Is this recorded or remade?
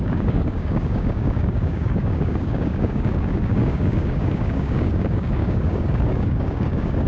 remade